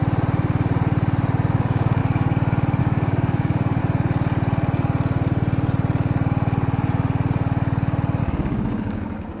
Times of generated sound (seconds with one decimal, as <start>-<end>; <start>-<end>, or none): 1.5-2.0; 2.8-3.8; 8.2-9.4